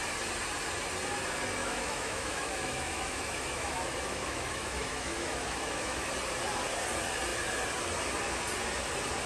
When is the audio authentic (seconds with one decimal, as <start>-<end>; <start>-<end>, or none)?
0.0-1.6; 6.1-9.3